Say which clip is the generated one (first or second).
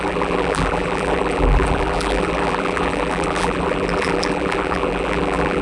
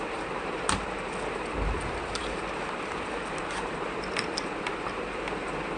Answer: first